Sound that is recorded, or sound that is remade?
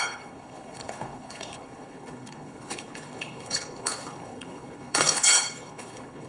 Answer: remade